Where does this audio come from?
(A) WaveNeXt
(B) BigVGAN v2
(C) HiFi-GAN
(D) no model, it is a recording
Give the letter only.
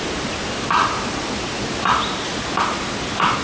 D